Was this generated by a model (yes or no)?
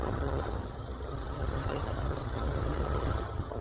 yes